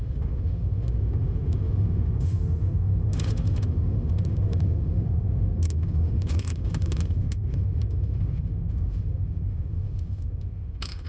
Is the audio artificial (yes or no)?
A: yes